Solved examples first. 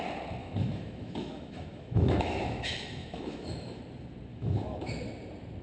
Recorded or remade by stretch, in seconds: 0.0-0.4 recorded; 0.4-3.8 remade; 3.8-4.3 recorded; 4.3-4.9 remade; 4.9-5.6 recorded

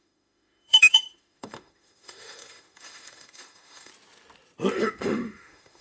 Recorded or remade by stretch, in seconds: 0.0-3.9 remade; 3.9-4.7 recorded; 4.7-5.8 remade